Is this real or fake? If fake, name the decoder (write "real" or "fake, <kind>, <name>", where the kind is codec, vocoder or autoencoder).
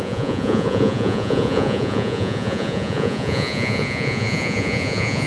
fake, vocoder, Vocos